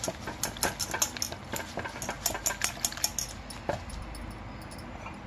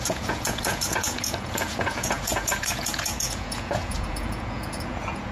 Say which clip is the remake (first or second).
second